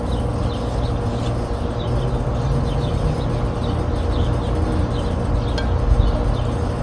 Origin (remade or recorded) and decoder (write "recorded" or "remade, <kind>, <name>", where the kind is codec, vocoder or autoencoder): recorded